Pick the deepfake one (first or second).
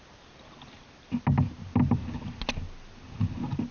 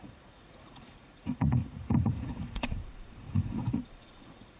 second